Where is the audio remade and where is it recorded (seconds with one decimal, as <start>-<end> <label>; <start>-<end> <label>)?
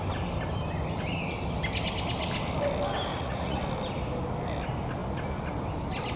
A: 0.0-3.1 recorded; 3.1-3.6 remade; 3.6-6.2 recorded